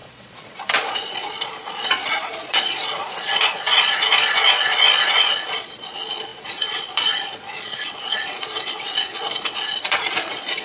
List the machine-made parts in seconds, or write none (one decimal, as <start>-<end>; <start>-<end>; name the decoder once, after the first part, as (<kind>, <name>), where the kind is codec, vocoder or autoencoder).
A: 0.0-10.6 (vocoder, Vocos)